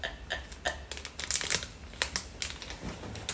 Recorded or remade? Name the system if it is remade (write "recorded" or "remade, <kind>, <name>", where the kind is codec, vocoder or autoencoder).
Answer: recorded